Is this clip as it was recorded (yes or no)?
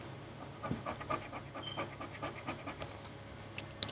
yes